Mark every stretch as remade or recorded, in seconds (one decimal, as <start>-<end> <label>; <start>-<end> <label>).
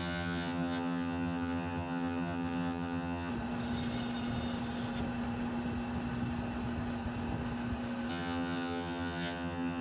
0.0-3.3 remade; 3.3-8.1 recorded; 8.1-9.8 remade